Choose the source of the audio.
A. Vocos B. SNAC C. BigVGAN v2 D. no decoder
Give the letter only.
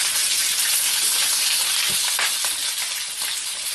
D